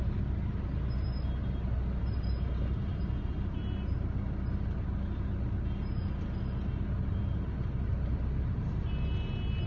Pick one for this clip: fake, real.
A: real